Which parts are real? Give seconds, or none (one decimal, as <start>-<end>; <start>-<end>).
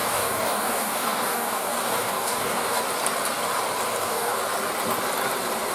2.8-4.0; 4.4-5.7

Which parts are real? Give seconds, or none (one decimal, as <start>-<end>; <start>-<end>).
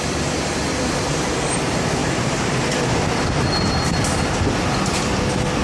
0.0-2.0; 2.6-5.6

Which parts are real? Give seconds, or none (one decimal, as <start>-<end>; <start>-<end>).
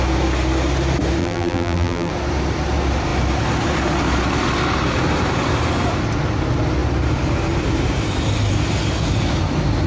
0.0-1.2; 2.1-9.9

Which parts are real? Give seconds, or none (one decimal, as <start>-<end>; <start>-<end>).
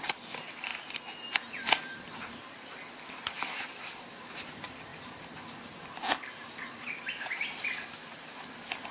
0.0-8.9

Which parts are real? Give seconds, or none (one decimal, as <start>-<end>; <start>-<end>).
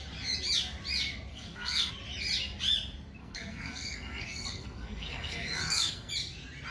0.0-1.3; 1.9-3.2; 6.1-6.7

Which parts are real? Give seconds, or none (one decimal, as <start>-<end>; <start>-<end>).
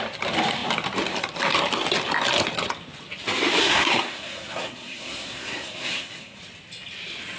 0.0-3.6; 6.4-7.4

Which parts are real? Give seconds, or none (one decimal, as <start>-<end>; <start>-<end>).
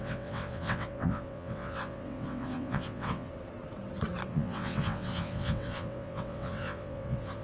3.3-4.3